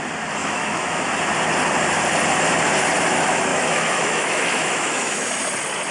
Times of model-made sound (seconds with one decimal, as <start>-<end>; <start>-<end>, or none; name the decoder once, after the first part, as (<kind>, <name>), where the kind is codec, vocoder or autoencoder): 0.4-1.0 (autoencoder, DAC-VAE); 3.5-5.4

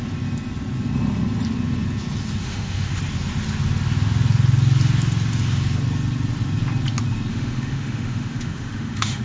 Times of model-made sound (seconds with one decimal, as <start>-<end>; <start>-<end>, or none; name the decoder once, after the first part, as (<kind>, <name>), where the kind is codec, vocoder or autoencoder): 2.4-3.0 (autoencoder, DAC-VAE); 7.3-9.2

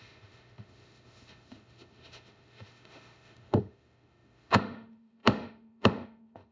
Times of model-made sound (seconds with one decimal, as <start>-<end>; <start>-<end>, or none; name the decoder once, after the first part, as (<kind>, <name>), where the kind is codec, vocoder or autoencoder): 0.0-6.5 (autoencoder, DAC-VAE)

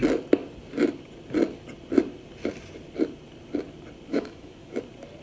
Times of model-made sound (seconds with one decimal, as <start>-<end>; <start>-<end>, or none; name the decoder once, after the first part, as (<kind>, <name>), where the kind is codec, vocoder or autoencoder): 4.1-4.8 (autoencoder, DAC-VAE)

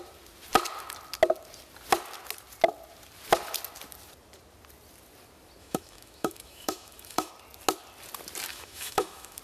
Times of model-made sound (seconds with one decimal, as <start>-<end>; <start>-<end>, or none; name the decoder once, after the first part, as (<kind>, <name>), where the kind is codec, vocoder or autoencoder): 5.6-7.3 (autoencoder, DAC-VAE); 8.5-9.4

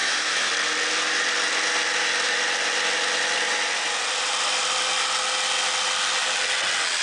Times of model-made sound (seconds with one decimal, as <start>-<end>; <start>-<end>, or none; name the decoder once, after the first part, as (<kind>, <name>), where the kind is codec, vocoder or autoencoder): 0.0-0.5 (autoencoder, DAC-VAE)

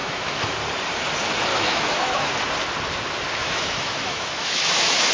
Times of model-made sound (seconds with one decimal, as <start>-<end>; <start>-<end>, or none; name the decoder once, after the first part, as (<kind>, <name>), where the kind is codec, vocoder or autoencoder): 0.0-0.5 (autoencoder, DAC-VAE); 1.5-2.3; 3.4-5.1

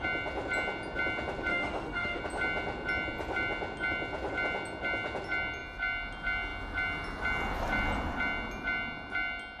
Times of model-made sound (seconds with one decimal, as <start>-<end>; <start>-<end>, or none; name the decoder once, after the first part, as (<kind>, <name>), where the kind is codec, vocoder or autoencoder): 1.5-2.2 (autoencoder, DAC-VAE)